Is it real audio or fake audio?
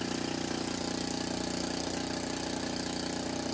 real